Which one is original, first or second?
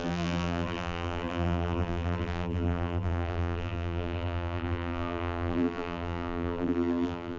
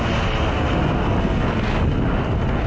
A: second